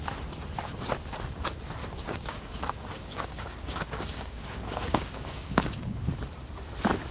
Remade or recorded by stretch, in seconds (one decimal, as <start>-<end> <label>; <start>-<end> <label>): 0.0-1.8 recorded; 1.8-6.0 remade; 6.0-7.1 recorded